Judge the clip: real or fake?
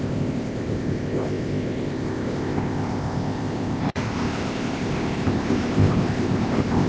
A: fake